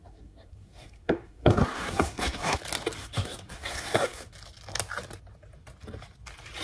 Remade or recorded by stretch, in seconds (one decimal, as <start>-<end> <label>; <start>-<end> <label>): 0.0-2.6 remade; 2.6-3.0 recorded; 3.0-4.3 remade; 4.3-6.6 recorded